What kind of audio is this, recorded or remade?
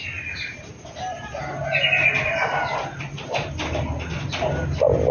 recorded